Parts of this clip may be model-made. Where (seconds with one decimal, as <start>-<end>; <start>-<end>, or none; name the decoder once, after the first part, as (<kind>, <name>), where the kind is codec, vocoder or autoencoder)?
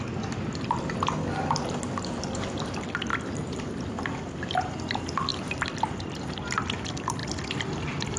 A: 1.2-2.5 (vocoder, BigVGAN v2); 3.1-4.2; 5.3-6.6